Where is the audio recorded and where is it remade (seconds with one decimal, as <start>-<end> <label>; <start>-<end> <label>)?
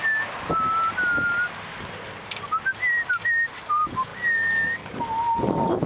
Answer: 0.0-4.1 recorded; 4.1-5.0 remade; 5.0-5.9 recorded